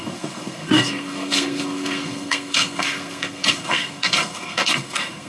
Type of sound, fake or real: fake